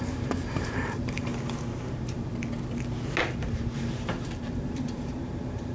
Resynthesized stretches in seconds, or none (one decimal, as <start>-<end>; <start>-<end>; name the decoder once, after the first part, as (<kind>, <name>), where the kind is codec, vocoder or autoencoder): 0.0-1.3 (vocoder, BigVGAN v2); 1.9-2.3; 3.2-5.7